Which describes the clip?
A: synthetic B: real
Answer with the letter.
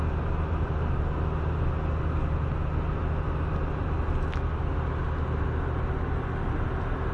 B